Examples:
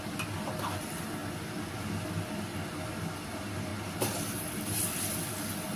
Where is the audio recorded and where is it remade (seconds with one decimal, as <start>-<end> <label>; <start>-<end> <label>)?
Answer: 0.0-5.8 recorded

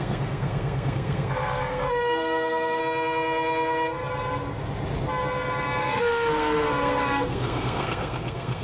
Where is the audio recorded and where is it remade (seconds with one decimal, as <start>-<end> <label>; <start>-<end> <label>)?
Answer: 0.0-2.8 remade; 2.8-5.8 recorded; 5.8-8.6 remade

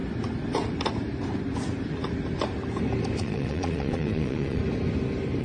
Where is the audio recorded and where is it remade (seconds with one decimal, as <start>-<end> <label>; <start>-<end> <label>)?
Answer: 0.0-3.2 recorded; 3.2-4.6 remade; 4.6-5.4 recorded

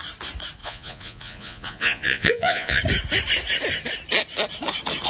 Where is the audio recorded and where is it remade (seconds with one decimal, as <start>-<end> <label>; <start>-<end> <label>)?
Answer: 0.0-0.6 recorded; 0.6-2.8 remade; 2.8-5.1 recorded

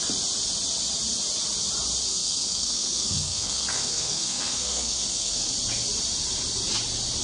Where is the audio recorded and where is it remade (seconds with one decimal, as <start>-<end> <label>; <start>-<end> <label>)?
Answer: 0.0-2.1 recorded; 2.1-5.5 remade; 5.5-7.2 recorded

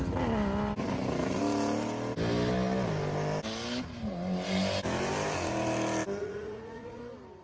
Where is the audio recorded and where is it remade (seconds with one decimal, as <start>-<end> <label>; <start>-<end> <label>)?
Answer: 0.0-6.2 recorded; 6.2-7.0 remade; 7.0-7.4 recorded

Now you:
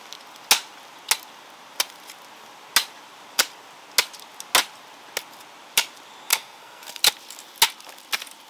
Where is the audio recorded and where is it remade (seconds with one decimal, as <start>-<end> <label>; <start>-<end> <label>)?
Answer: 0.0-6.3 recorded; 6.3-7.0 remade; 7.0-8.5 recorded

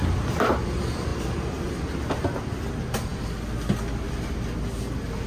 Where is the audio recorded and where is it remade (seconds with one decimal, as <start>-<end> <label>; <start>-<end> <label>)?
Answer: 0.0-5.3 recorded